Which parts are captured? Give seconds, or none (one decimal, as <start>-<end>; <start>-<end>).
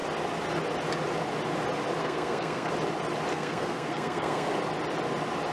0.0-2.0; 2.7-3.3; 4.5-5.5